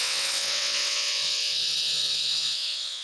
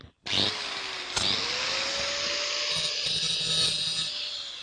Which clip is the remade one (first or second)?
first